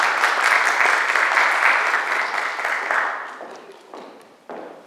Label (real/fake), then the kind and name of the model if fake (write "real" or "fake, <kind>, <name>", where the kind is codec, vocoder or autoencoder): real